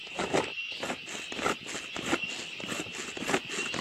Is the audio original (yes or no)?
yes